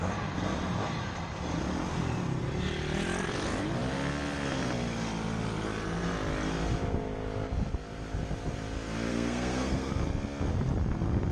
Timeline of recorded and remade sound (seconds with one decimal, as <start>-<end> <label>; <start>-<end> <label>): 0.0-9.1 recorded; 9.1-9.9 remade; 9.9-11.3 recorded